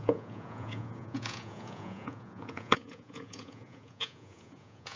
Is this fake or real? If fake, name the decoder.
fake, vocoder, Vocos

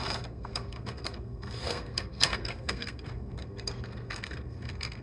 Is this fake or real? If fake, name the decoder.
fake, codec, SNAC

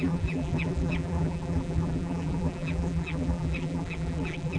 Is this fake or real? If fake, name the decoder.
fake, vocoder, BigVGAN v2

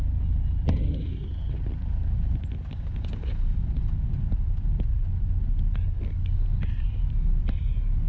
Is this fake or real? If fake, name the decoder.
real